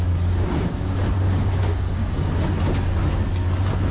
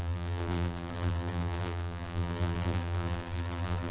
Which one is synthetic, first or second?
second